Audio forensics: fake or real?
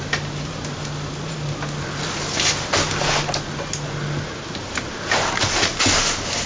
real